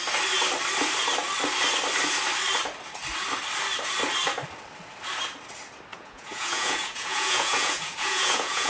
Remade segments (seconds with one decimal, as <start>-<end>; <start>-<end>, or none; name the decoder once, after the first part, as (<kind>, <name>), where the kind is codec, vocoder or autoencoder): 5.9-8.7 (vocoder, Vocos)